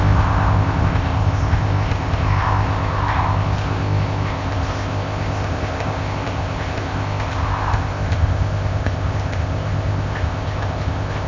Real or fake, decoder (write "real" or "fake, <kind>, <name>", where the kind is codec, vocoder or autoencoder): fake, codec, ZipCodec